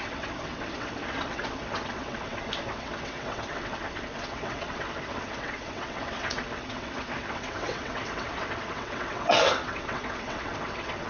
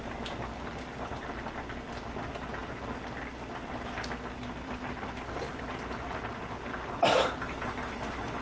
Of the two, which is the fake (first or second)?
first